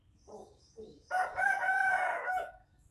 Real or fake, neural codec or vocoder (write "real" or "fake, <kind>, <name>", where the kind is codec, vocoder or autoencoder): fake, codec, DAC